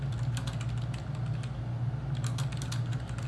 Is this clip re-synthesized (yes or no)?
no